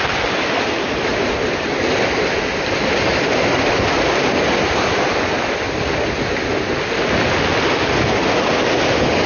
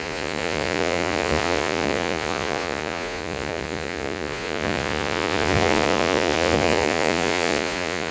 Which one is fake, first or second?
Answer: second